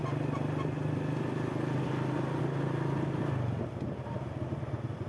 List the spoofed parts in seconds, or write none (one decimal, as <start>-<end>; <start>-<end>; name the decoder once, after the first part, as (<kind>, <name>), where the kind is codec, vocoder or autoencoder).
none